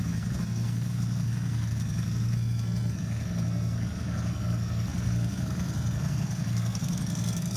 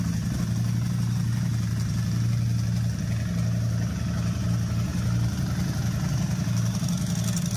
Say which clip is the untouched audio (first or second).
second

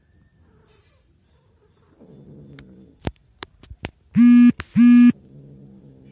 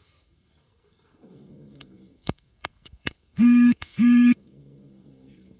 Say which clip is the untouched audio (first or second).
first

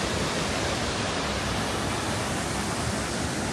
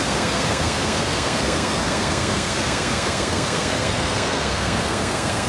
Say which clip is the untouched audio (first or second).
first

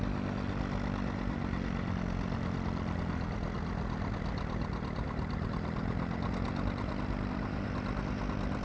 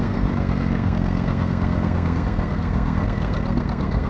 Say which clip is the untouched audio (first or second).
first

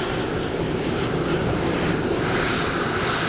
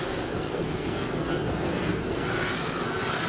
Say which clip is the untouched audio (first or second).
first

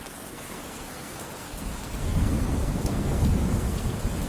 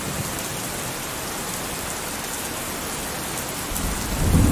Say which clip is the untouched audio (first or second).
second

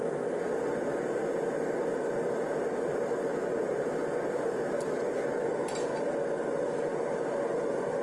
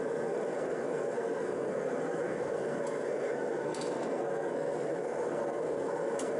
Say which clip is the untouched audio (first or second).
first